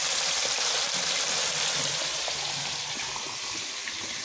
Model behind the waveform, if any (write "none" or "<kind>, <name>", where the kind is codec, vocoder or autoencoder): vocoder, BigVGAN v2